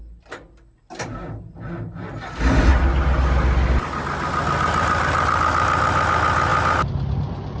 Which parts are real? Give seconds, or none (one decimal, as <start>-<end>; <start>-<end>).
0.0-7.6